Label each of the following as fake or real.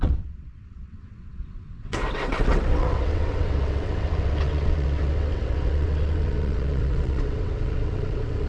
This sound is fake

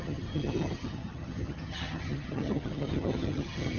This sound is fake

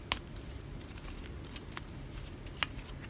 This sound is real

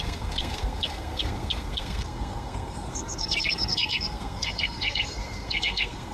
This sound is fake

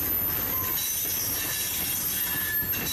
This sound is real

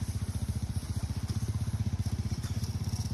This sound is fake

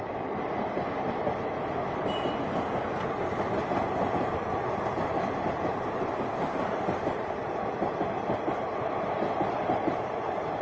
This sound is real